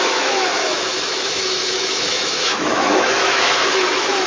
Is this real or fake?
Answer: fake